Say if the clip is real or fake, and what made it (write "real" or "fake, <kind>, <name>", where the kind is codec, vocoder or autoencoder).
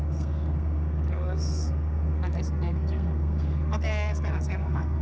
fake, codec, SNAC